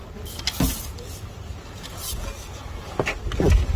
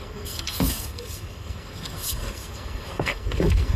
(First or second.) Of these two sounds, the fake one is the second